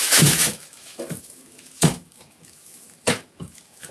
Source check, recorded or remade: remade